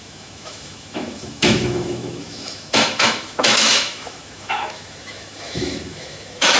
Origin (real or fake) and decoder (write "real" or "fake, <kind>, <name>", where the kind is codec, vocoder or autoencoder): fake, autoencoder, DAC-VAE